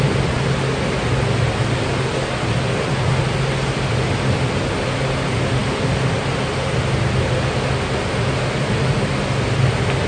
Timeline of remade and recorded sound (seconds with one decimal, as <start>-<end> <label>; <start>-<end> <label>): 0.0-10.1 recorded

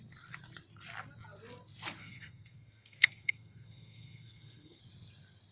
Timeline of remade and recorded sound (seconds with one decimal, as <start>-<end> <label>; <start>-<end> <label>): 0.0-2.0 recorded; 2.0-4.8 remade; 4.8-5.5 recorded

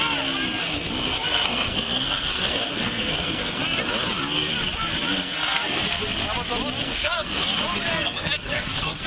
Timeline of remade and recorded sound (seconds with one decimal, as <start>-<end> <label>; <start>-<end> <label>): 0.0-0.6 recorded; 0.6-3.6 remade; 3.6-5.1 recorded; 5.1-5.8 remade; 5.8-6.8 recorded; 6.8-7.4 remade; 7.4-7.9 recorded; 7.9-9.1 remade

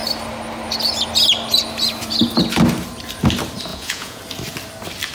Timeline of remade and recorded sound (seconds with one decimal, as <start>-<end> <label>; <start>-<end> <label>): 0.0-3.7 recorded; 3.7-4.2 remade; 4.2-5.1 recorded

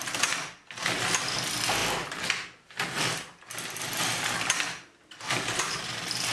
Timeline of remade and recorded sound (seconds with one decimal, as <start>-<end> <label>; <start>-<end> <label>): 0.0-6.3 recorded

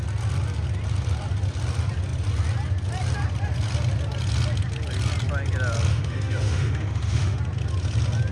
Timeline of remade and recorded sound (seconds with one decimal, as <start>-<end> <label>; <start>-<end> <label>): 0.0-5.9 recorded; 5.9-7.4 remade; 7.4-8.3 recorded